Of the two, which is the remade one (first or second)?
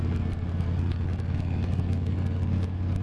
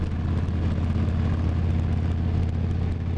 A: first